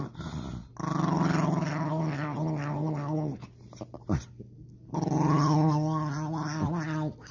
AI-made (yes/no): no